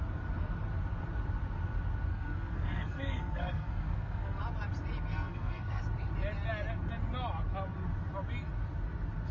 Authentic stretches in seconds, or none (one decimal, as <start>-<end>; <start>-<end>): 0.0-2.1; 4.4-5.1; 5.8-9.3

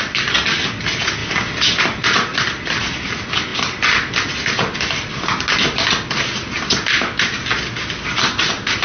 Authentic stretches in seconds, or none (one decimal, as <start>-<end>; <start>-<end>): 0.0-2.3; 2.8-8.8